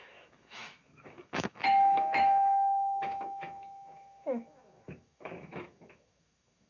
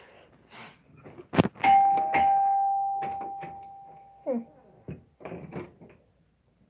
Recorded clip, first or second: second